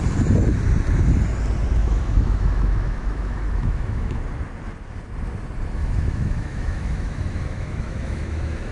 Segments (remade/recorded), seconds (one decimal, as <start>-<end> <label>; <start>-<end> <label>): 0.0-1.8 recorded; 1.8-4.2 remade; 4.2-5.8 recorded; 5.8-8.7 remade